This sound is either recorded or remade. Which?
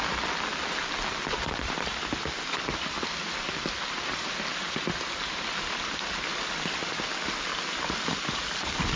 recorded